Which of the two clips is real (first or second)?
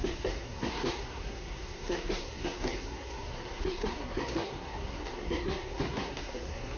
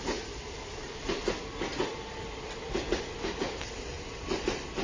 second